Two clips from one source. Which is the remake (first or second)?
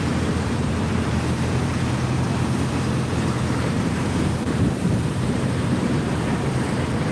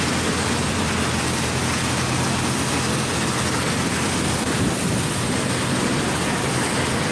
first